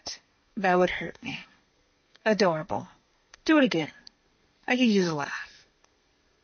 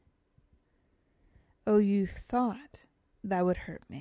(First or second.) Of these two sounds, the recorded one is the second